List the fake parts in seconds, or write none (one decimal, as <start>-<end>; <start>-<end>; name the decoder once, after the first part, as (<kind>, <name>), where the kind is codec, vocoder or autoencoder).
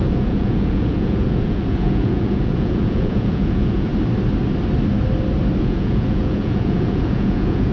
0.0-3.9 (vocoder, Vocos); 5.6-7.7